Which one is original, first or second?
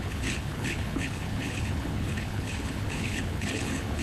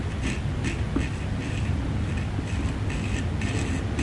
second